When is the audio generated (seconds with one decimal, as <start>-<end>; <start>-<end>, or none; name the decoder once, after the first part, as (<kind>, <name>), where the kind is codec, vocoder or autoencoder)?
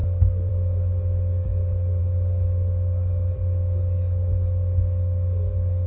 0.0-0.5 (codec, SNAC)